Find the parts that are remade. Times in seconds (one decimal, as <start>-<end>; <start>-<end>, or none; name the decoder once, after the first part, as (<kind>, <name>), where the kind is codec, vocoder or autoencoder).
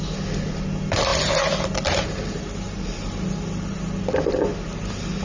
none